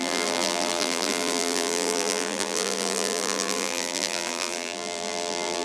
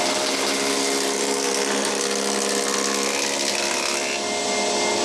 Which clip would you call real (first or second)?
second